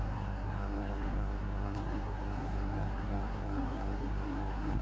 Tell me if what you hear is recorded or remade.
remade